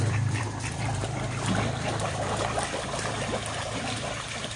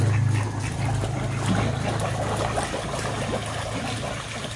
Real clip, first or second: second